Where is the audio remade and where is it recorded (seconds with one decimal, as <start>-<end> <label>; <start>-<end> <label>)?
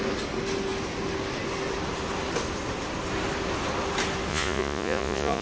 0.0-4.3 recorded; 4.3-5.4 remade